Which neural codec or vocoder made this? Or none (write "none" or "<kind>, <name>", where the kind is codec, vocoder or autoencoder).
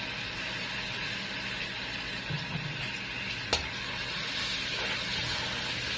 none